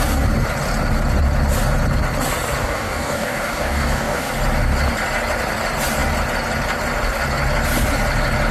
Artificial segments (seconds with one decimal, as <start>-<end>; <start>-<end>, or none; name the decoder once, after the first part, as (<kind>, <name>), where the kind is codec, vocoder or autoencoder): 2.6-4.3 (codec, DAC)